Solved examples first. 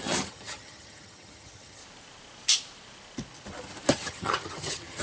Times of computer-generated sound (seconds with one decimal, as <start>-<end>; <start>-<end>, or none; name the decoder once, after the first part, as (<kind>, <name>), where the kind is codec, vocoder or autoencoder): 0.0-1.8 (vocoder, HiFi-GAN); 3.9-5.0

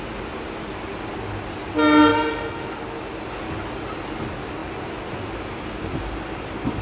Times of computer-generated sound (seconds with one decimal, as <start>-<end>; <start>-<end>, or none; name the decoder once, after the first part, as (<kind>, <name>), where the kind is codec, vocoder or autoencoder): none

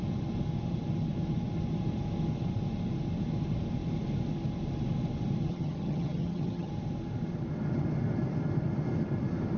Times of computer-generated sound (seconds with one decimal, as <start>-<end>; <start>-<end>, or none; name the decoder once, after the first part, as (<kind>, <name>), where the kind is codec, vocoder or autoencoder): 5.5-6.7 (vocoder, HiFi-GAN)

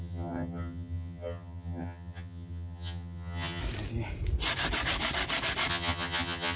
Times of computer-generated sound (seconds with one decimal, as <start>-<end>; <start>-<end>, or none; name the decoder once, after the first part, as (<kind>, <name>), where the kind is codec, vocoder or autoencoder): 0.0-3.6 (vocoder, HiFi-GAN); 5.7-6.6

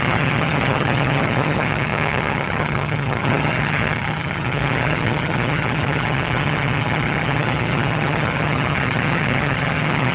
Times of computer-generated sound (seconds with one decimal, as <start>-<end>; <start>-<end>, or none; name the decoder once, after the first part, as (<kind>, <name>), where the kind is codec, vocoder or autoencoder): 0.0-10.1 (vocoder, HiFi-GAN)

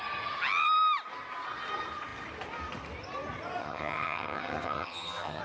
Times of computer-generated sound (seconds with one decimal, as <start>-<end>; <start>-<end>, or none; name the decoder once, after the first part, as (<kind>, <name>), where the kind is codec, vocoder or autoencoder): 3.6-5.4 (vocoder, HiFi-GAN)

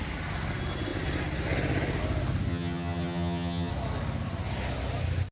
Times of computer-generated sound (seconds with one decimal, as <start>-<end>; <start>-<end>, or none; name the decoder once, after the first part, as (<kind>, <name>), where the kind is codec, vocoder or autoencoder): 2.5-3.7 (vocoder, HiFi-GAN)